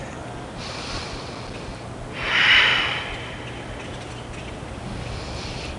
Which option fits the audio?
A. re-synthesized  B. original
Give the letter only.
B